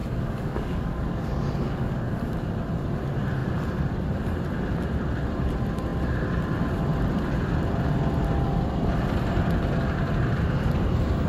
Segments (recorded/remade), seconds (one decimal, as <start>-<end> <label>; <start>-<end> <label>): 0.0-2.2 remade; 2.2-11.3 recorded